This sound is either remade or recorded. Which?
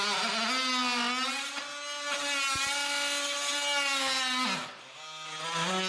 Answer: recorded